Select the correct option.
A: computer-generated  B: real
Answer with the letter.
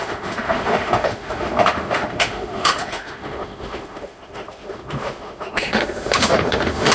A